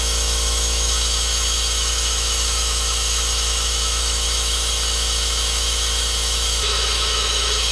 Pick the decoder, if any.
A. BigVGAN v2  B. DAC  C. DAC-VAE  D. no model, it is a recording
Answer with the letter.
C